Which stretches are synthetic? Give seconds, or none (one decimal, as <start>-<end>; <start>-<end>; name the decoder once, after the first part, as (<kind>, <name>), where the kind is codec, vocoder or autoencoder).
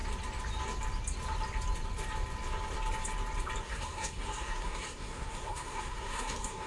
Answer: 3.6-6.7 (codec, SNAC)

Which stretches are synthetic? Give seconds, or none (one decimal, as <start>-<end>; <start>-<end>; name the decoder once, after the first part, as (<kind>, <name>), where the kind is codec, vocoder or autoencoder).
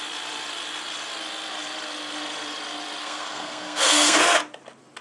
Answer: 3.0-4.2 (codec, SNAC)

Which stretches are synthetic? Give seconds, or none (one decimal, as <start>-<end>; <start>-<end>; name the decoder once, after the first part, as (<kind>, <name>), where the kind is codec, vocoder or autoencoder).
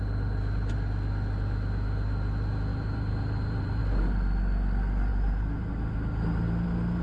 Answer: 2.7-3.8 (vocoder, BigVGAN v2); 5.1-5.7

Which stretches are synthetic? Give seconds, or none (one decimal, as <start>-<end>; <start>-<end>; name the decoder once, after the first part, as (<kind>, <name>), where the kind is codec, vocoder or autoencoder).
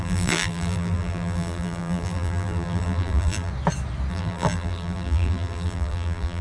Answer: 0.0-3.5 (vocoder, BigVGAN v2); 4.1-6.4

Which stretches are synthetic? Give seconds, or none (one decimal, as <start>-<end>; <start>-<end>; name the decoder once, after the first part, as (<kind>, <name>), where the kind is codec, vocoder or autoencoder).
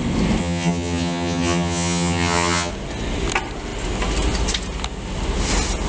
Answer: 0.4-2.7 (vocoder, HiFi-GAN)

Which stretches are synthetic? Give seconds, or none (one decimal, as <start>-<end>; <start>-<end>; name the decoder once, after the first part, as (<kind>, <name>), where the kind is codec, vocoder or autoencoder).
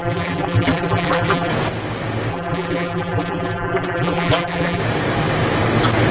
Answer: 0.0-1.5 (vocoder, BigVGAN v2); 2.3-4.8